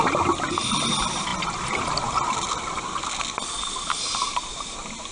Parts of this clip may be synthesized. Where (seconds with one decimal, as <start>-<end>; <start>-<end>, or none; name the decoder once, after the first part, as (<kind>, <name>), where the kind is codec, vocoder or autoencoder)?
none